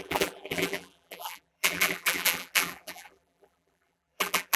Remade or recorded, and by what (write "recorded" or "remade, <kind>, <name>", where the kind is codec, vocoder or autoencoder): remade, vocoder, BigVGAN v2